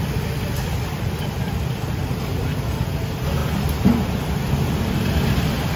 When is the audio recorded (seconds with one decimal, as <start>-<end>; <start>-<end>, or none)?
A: 2.0-5.8